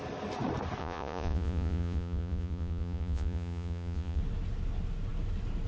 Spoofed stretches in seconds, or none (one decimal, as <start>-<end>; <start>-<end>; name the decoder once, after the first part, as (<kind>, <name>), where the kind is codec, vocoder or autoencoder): 0.8-4.2 (vocoder, Vocos)